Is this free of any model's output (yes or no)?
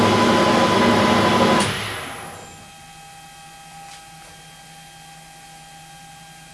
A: yes